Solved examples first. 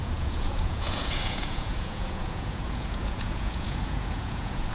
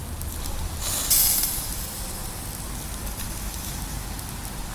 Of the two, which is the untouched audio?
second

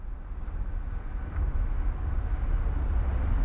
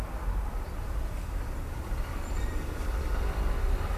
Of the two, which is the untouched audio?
first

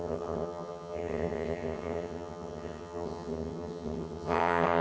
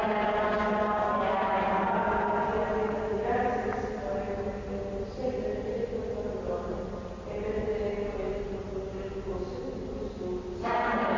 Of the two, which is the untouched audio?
second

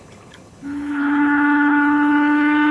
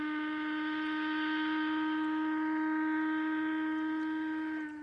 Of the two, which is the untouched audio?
second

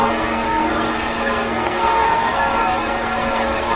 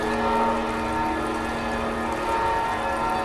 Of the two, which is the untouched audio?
second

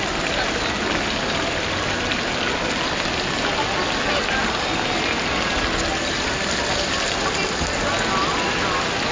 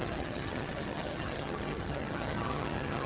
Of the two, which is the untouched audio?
first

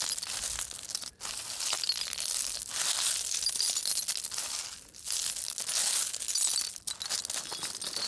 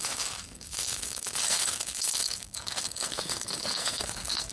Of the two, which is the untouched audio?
first